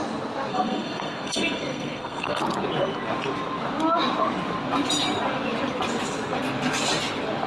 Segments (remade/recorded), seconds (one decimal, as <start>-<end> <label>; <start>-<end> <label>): 0.0-0.5 recorded; 0.5-2.4 remade; 2.4-7.5 recorded